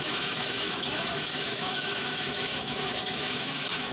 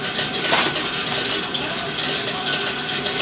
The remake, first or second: first